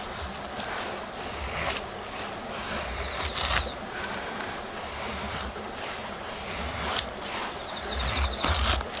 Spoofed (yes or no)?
no